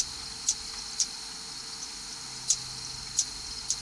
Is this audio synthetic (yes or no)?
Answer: no